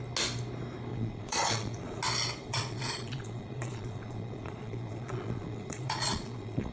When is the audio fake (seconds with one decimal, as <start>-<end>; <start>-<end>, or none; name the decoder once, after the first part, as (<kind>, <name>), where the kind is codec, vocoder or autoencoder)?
0.9-2.0 (vocoder, Vocos); 2.4-6.7